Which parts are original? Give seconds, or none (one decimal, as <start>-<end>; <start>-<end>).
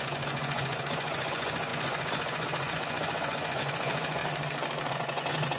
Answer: 4.2-4.9